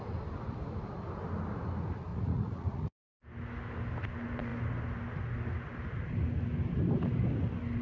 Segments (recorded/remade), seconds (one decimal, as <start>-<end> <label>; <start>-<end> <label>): 0.0-2.1 recorded; 2.1-2.9 remade; 2.9-7.8 recorded